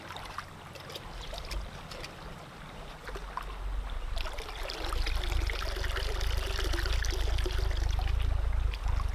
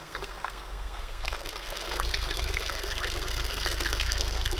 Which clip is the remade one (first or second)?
second